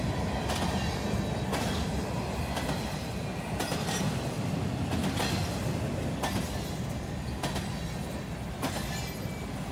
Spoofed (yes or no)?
no